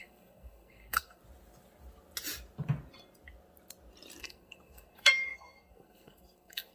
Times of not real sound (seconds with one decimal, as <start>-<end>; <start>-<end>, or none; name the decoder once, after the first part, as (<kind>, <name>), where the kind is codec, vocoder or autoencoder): 0.0-1.2 (codec, SNAC); 4.2-6.7